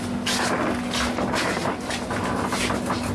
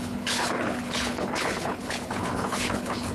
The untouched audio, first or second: first